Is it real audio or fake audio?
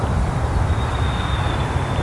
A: real